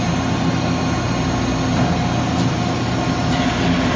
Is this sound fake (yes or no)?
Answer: no